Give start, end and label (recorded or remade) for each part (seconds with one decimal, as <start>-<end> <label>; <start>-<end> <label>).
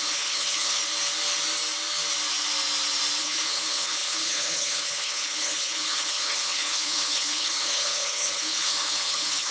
0.0-0.8 remade; 0.8-3.2 recorded; 3.2-9.5 remade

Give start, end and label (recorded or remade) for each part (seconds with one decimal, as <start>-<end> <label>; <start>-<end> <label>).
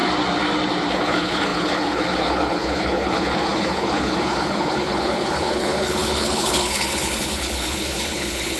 0.0-0.9 recorded; 0.9-8.6 remade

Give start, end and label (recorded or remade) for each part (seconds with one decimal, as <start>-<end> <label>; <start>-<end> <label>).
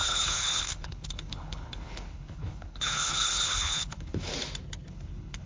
0.0-4.3 remade; 4.3-4.9 recorded; 4.9-5.5 remade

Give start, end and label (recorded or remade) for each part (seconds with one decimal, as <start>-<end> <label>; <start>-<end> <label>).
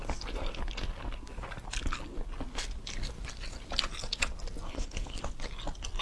0.0-4.7 recorded; 4.7-5.2 remade; 5.2-6.0 recorded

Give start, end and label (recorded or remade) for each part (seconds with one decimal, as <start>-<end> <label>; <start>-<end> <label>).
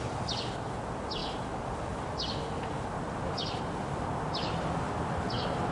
0.0-5.7 recorded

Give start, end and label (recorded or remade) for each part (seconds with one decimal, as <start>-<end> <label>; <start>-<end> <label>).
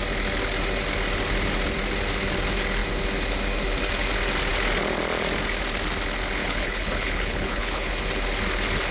0.0-6.4 recorded; 6.4-7.9 remade; 7.9-8.9 recorded